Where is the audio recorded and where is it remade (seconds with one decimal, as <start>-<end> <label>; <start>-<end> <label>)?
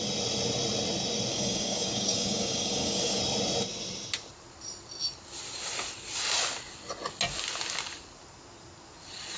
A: 0.0-1.3 recorded; 1.3-3.2 remade; 3.2-9.4 recorded